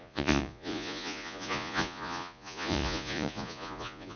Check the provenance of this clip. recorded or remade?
remade